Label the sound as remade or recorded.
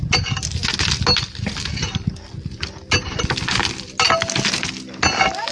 recorded